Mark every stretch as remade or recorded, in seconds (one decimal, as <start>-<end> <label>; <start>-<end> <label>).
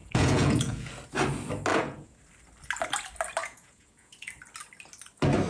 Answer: 0.0-0.9 remade; 0.9-1.7 recorded; 1.7-2.2 remade; 2.2-3.4 recorded; 3.4-4.3 remade; 4.3-5.5 recorded